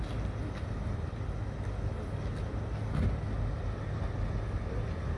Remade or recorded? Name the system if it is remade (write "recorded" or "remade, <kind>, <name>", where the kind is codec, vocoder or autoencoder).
recorded